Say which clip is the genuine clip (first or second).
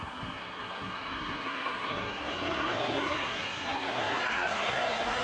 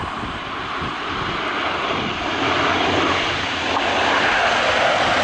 second